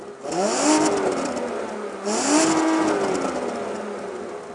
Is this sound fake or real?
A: real